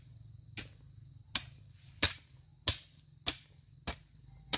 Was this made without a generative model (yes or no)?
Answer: yes